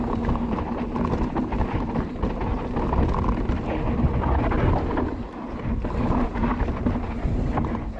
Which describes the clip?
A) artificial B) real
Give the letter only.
B